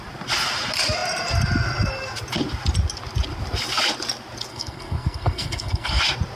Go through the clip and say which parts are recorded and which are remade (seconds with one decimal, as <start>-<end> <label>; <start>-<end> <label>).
0.0-4.5 recorded; 4.5-6.0 remade; 6.0-6.4 recorded